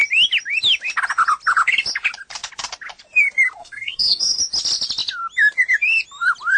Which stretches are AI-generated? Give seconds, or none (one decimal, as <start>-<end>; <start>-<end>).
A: 3.6-4.4